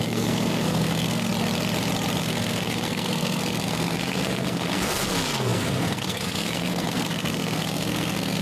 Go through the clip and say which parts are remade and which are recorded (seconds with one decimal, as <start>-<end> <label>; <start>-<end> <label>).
0.0-1.3 remade; 1.3-2.2 recorded; 2.2-8.4 remade